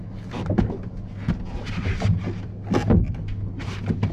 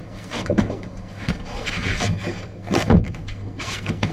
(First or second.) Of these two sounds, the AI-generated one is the second